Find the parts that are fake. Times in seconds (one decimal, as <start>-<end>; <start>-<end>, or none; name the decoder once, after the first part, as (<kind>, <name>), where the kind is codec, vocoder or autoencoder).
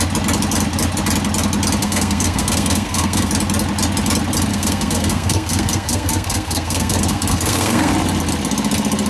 1.8-3.3 (codec, SNAC); 4.5-7.9